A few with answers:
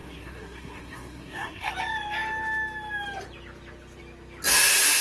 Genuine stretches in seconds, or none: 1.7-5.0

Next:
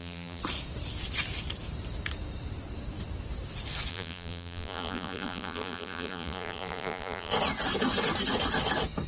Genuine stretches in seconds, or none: 0.4-3.9; 7.3-9.1

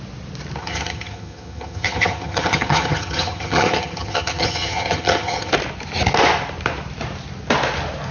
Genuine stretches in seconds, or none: 0.0-0.6; 5.5-8.1

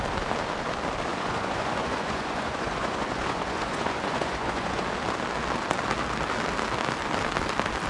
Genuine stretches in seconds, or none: 0.0-1.1; 4.8-7.9

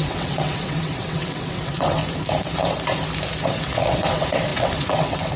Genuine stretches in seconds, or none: 2.0-3.4

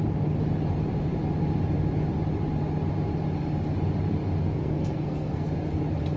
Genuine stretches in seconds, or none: 0.0-4.4; 5.5-6.2

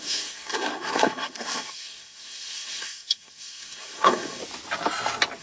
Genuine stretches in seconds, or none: 4.4-5.4